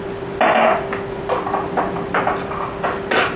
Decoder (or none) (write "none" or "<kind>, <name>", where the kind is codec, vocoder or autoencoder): none